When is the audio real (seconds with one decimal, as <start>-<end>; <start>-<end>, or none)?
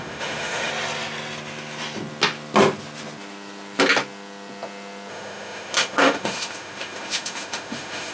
0.7-5.1